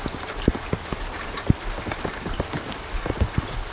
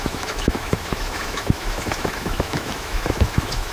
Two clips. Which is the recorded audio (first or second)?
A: first